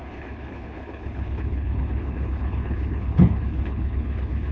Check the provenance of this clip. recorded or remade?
remade